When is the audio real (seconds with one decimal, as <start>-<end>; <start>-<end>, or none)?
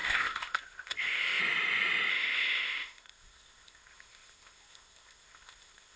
1.4-2.1